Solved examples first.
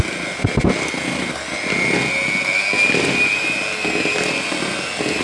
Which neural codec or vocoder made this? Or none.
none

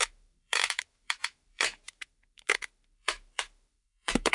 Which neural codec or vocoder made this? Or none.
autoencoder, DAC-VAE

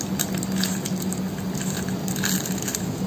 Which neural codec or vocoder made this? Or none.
none